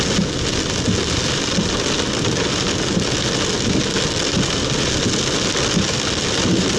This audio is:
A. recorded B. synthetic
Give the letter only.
A